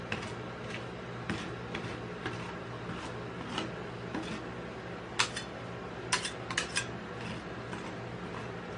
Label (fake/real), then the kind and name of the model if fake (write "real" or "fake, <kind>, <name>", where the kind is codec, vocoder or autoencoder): real